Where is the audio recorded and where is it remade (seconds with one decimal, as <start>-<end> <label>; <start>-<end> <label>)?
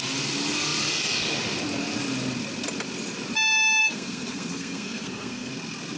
0.0-3.8 recorded; 3.8-5.5 remade; 5.5-6.0 recorded